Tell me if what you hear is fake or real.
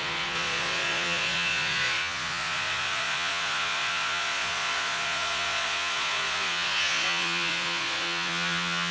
fake